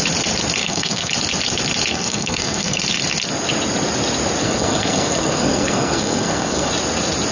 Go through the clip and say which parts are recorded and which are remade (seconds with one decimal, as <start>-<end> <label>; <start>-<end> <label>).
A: 0.0-0.6 recorded; 0.6-1.1 remade; 1.1-1.9 recorded; 1.9-2.8 remade; 2.8-4.4 recorded; 4.4-6.7 remade; 6.7-7.3 recorded